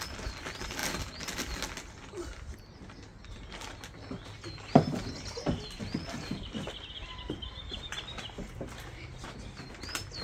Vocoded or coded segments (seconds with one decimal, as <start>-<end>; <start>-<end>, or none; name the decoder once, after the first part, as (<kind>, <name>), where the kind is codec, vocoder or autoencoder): none